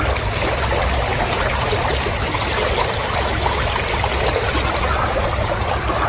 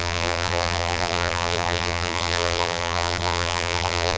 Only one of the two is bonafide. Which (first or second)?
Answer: first